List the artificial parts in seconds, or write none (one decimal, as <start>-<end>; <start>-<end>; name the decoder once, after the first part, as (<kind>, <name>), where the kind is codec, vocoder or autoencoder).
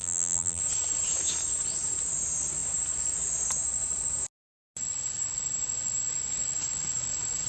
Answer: 0.0-0.6 (vocoder, BigVGAN v2)